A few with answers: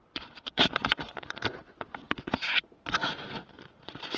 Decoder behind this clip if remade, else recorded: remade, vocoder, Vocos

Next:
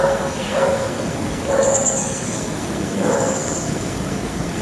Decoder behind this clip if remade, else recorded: remade, codec, SNAC